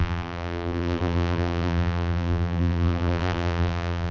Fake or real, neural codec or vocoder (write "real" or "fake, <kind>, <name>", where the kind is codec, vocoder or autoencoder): fake, vocoder, BigVGAN v2